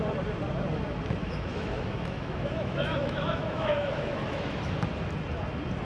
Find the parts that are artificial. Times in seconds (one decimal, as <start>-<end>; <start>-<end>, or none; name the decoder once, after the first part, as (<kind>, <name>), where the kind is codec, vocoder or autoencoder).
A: 1.2-4.7 (autoencoder, DAC-VAE)